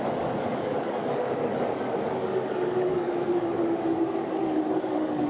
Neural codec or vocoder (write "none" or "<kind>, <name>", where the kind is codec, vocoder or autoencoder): codec, DAC